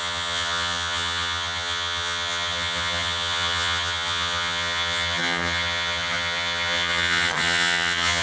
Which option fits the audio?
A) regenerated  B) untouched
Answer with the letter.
A